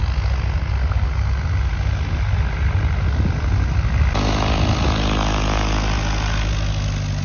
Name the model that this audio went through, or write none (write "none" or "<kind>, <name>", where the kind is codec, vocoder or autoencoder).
none